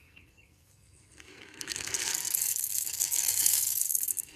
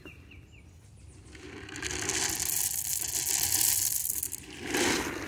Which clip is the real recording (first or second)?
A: second